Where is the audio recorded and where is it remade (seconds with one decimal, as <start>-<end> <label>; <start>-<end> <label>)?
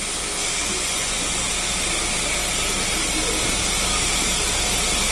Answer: 0.0-0.6 recorded; 0.6-1.4 remade; 1.4-5.1 recorded